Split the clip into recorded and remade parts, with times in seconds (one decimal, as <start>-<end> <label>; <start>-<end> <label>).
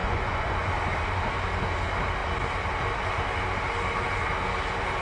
0.0-0.7 remade; 0.7-5.0 recorded